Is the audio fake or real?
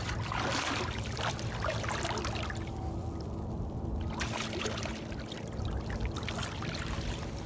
real